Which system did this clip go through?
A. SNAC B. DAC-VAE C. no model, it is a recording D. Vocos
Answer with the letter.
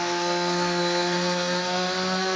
A